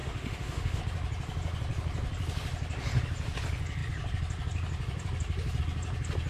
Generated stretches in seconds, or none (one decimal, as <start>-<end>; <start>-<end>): 0.0-0.8